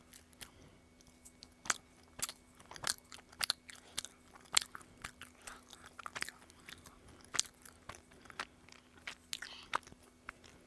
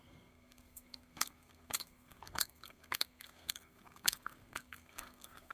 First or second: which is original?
first